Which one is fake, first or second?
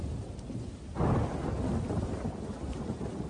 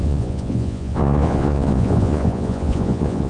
second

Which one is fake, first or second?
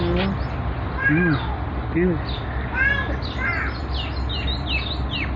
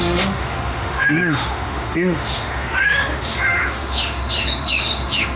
second